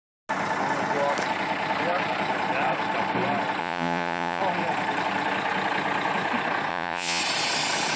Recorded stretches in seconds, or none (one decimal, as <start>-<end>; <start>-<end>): 0.0-3.6; 4.4-6.7; 7.2-8.0